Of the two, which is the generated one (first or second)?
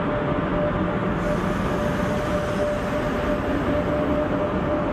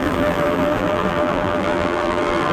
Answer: second